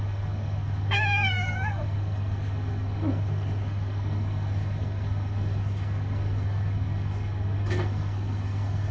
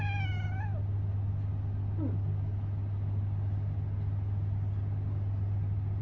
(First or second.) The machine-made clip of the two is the first